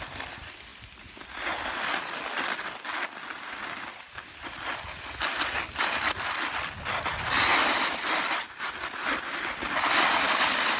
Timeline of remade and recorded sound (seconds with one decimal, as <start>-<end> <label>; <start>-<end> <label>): 0.0-10.8 recorded